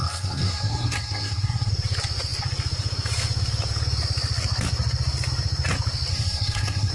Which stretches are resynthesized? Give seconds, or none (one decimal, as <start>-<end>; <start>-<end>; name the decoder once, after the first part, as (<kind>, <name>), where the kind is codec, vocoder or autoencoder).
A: 0.0-1.7 (codec, SNAC); 6.1-6.9